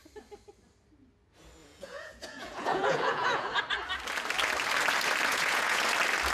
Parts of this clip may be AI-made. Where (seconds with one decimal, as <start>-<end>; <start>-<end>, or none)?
1.6-3.6; 5.3-5.8